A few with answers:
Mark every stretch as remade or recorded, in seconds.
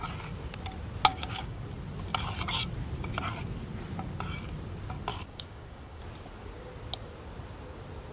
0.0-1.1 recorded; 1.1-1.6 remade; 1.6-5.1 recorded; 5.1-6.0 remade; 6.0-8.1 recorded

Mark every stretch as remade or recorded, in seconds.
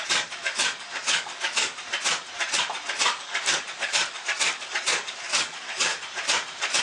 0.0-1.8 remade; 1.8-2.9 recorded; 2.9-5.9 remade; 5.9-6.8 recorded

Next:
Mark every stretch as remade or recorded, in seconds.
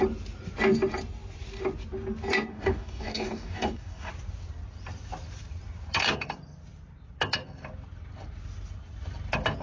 0.0-2.5 recorded; 2.5-4.1 remade; 4.1-9.6 recorded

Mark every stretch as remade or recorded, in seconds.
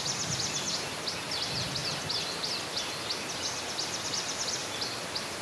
0.0-5.4 recorded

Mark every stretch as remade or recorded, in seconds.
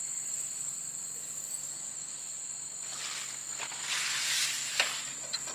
0.0-1.2 recorded; 1.2-2.2 remade; 2.2-5.5 recorded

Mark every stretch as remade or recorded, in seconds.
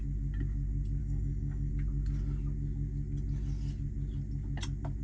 0.0-1.0 recorded; 1.0-1.7 remade; 1.7-5.0 recorded